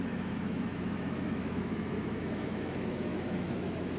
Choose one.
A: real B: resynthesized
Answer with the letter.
B